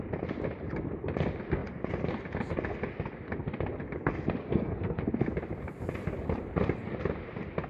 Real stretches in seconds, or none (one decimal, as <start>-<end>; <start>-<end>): 0.0-4.4; 5.0-7.7

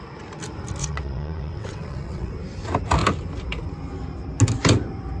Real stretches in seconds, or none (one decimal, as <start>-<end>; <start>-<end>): 0.0-0.8; 2.3-5.2

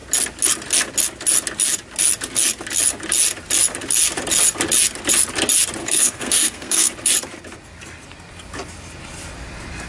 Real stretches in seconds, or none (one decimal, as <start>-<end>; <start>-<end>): 0.0-5.8; 6.9-9.9

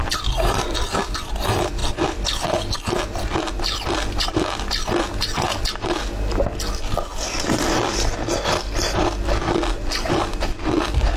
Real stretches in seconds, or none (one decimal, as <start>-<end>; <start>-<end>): 0.0-11.2